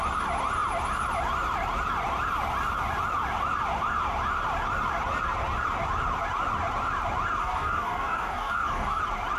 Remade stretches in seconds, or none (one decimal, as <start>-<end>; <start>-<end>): 7.4-9.0